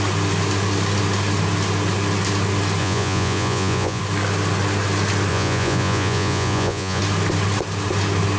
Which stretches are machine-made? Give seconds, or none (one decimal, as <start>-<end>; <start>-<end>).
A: 2.8-4.0; 5.3-7.0